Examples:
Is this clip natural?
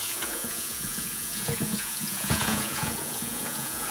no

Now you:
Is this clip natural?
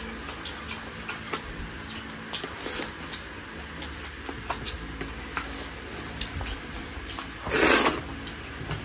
yes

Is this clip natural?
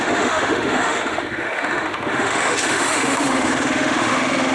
no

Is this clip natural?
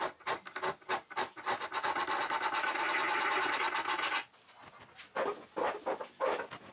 yes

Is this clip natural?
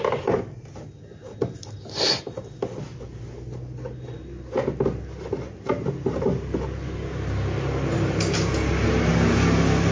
yes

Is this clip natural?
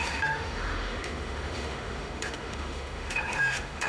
no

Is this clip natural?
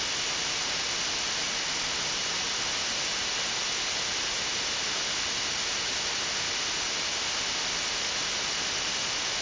yes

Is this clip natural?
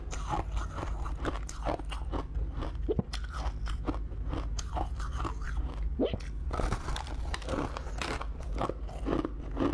yes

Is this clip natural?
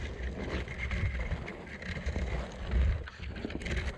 yes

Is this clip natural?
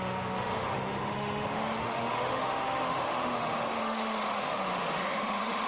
no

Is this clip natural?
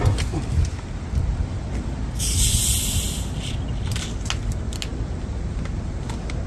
yes